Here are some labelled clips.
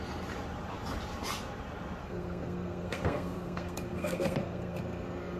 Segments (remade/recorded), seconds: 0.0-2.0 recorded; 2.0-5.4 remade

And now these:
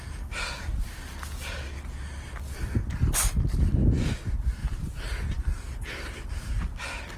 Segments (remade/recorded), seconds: 0.0-4.6 recorded; 4.6-6.3 remade; 6.3-7.2 recorded

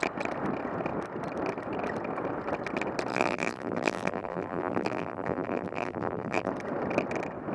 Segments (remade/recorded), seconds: 0.0-3.1 recorded; 3.1-6.5 remade; 6.5-7.5 recorded

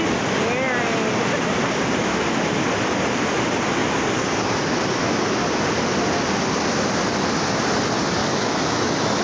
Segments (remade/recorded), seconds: 0.0-8.2 recorded; 8.2-9.2 remade

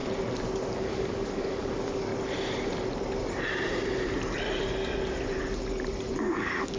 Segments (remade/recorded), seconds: 0.0-0.8 recorded; 0.8-2.1 remade; 2.1-6.2 recorded; 6.2-6.8 remade

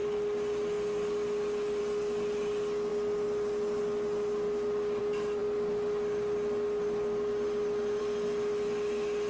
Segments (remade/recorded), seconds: 0.0-9.3 recorded